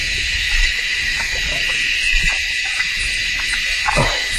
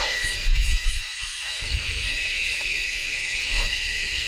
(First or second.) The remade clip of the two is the second